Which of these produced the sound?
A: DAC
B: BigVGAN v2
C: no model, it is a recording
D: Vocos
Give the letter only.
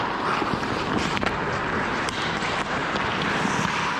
C